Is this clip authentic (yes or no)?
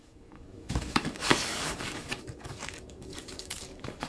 no